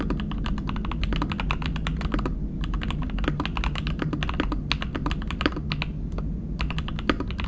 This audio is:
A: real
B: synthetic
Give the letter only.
A